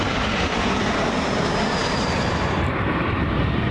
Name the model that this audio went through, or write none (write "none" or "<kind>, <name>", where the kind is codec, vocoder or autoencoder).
vocoder, BigVGAN v2